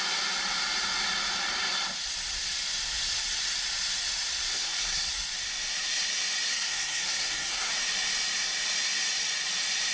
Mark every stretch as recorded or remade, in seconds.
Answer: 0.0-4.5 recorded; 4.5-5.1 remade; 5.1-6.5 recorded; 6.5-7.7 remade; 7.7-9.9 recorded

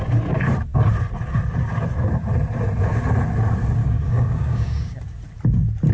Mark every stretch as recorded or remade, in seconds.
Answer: 0.0-3.8 recorded; 3.8-5.0 remade; 5.0-5.9 recorded

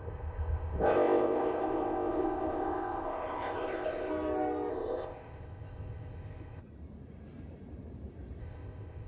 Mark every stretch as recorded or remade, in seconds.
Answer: 0.0-4.1 remade; 4.1-4.7 recorded; 4.7-6.6 remade; 6.6-8.4 recorded; 8.4-9.1 remade

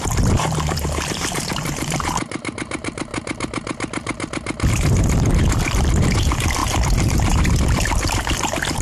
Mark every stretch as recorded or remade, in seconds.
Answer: 0.0-3.1 remade; 3.1-4.7 recorded; 4.7-8.8 remade